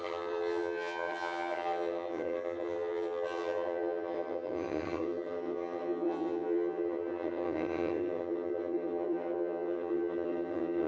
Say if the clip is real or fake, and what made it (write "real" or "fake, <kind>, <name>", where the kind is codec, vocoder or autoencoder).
fake, vocoder, HiFi-GAN